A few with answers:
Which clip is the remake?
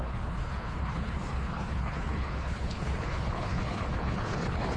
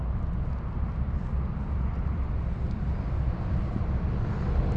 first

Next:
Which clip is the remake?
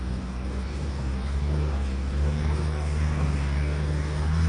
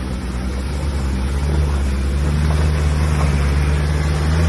first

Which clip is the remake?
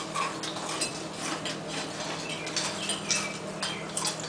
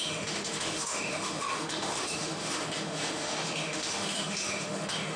second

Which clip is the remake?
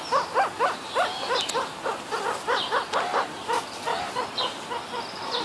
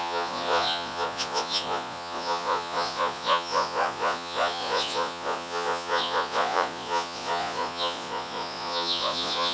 second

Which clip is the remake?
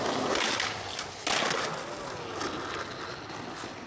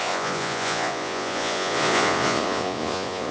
second